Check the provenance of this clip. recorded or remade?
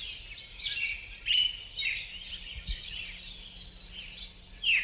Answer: recorded